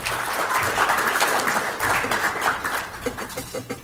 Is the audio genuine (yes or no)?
no